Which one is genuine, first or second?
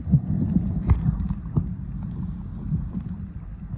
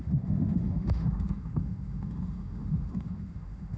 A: first